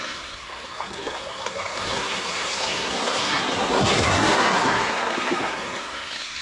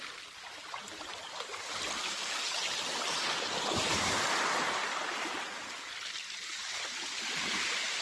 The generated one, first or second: first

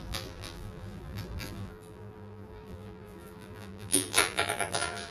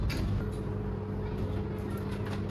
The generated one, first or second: first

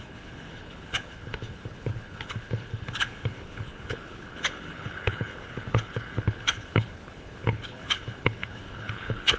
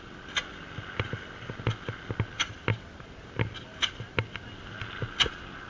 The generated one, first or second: first